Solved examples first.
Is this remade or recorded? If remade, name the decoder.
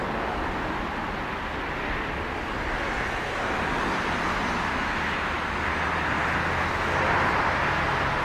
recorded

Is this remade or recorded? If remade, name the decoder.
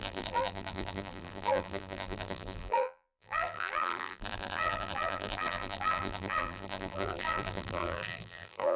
remade, vocoder, BigVGAN v2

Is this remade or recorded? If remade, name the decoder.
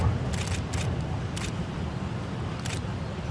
recorded